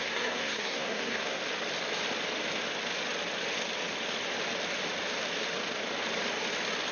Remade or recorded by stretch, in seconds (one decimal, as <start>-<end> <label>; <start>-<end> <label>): 0.0-1.4 remade; 1.4-6.9 recorded